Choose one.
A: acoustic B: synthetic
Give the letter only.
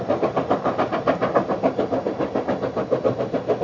A